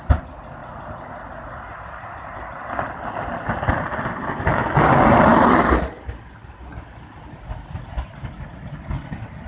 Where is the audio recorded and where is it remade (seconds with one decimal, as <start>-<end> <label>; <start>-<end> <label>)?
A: 0.0-9.5 recorded